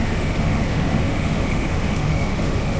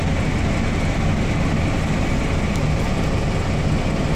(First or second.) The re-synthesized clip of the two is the first